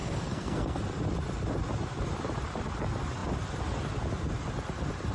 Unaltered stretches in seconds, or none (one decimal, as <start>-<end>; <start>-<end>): 0.8-5.1

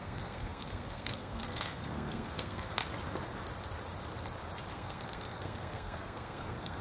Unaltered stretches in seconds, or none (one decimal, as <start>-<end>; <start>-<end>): 2.8-4.7